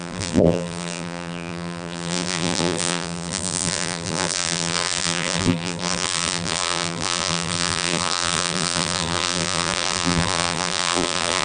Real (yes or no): no